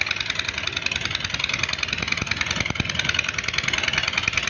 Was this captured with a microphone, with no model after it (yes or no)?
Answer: yes